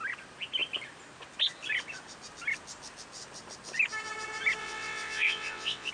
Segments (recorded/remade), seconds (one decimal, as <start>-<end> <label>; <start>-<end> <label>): 0.0-4.6 recorded; 4.6-5.9 remade